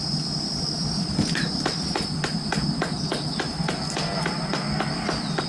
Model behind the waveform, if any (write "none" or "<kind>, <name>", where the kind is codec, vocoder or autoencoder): none